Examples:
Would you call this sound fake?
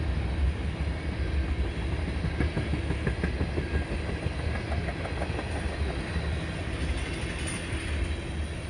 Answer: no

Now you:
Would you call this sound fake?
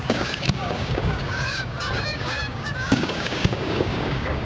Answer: yes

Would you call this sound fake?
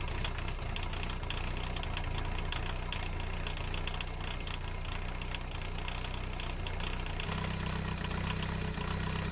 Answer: no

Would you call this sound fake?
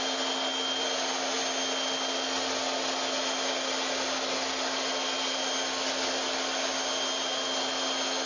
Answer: no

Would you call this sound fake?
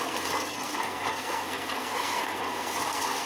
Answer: yes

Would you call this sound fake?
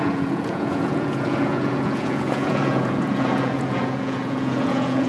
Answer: yes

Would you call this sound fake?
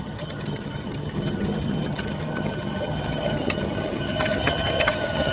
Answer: yes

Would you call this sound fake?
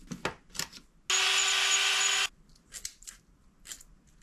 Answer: no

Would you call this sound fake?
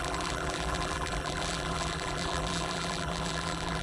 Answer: yes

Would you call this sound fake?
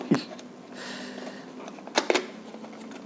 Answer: no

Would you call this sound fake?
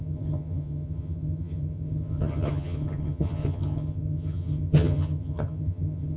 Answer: yes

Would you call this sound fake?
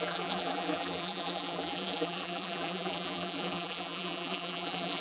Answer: yes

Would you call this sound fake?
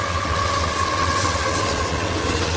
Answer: yes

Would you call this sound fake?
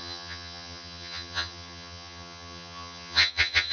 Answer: yes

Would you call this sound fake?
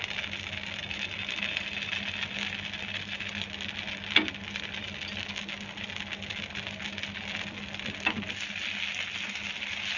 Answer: no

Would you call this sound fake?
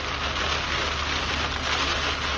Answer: no